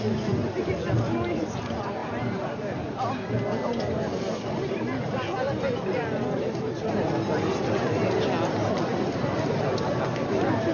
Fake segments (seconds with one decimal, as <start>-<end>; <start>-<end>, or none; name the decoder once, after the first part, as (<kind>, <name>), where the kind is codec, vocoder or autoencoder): none